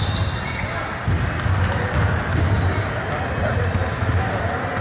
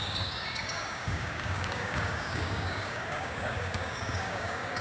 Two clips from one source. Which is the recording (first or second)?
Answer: first